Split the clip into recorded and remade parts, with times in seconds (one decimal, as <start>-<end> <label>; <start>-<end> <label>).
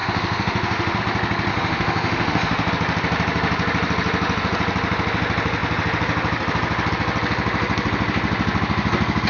0.0-1.0 remade; 1.0-1.5 recorded; 1.5-2.7 remade; 2.7-9.3 recorded